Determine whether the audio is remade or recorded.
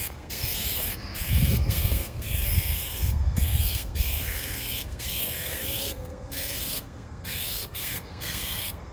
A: remade